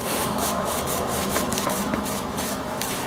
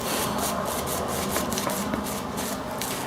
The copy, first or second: first